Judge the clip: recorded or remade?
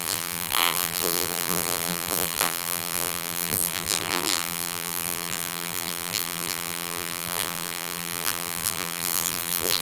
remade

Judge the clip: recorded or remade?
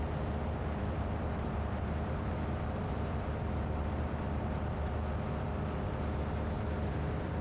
remade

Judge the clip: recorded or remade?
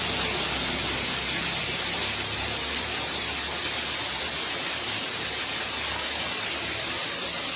recorded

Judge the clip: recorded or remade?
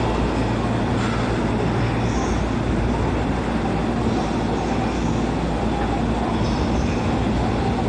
recorded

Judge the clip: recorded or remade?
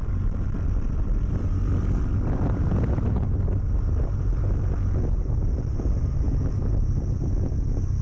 recorded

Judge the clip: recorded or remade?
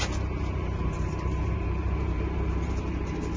remade